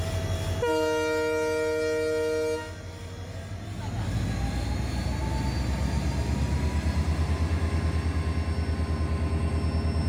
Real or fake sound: real